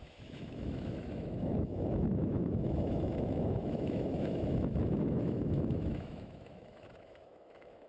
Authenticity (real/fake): fake